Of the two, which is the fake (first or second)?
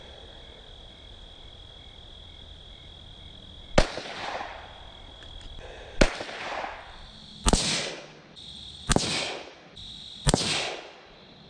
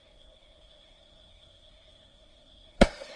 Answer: second